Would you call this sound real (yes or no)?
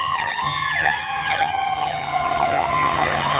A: no